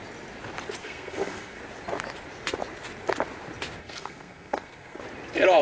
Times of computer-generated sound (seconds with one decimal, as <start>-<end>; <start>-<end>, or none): 0.8-1.6; 3.8-5.0